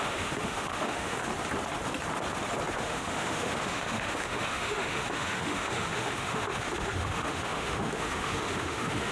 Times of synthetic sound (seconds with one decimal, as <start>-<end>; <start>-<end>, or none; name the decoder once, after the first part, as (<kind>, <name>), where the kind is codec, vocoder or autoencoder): 0.0-1.3 (autoencoder, DAC-VAE); 2.7-9.1